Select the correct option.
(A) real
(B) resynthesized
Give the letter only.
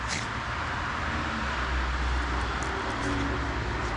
A